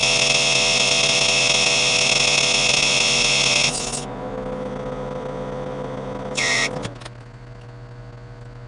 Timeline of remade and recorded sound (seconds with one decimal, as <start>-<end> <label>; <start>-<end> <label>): 0.0-8.7 recorded